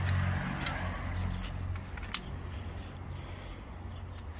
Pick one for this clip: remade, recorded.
recorded